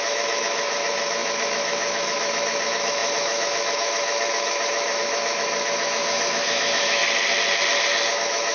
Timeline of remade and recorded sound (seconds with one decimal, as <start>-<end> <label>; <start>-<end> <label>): 0.0-7.0 remade; 7.0-8.1 recorded; 8.1-8.5 remade